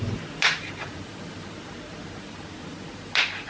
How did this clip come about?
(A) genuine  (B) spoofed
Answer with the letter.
A